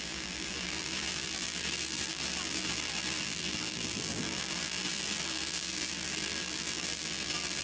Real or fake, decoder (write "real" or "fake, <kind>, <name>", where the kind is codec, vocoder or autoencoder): fake, vocoder, BigVGAN v2